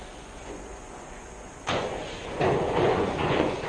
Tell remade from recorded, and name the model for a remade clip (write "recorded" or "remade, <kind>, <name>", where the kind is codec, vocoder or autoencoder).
remade, vocoder, Vocos